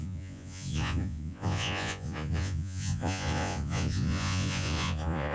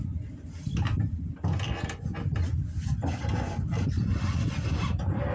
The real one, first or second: second